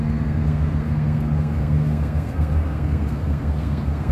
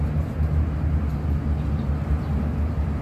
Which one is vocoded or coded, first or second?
first